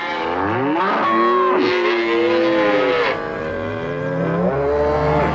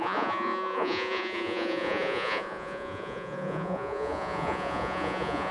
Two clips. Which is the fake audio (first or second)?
second